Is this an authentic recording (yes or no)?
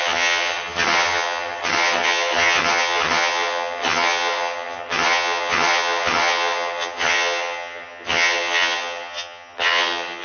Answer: no